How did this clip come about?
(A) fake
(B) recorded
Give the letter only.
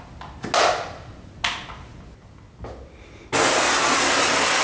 B